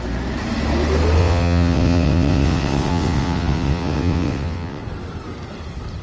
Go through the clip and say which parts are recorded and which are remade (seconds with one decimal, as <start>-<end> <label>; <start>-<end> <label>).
0.0-1.2 recorded; 1.2-4.8 remade; 4.8-6.0 recorded